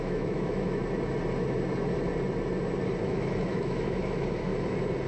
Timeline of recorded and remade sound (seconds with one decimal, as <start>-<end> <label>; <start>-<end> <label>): 0.0-0.8 remade; 0.8-3.0 recorded; 3.0-4.5 remade; 4.5-5.1 recorded